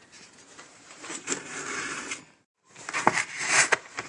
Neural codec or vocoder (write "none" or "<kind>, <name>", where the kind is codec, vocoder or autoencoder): vocoder, BigVGAN v2